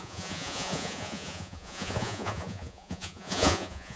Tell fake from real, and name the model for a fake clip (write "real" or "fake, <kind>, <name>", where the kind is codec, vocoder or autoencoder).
fake, vocoder, Vocos